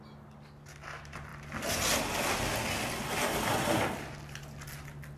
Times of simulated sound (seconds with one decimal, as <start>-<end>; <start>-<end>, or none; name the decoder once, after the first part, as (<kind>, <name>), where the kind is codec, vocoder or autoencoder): none